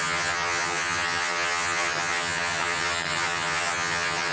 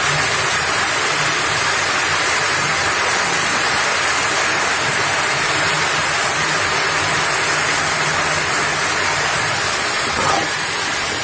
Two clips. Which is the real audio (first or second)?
second